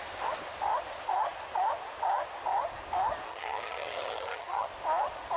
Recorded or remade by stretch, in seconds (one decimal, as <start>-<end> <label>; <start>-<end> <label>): 0.0-3.3 recorded; 3.3-4.7 remade; 4.7-5.4 recorded